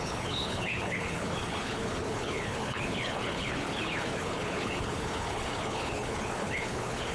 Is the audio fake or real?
fake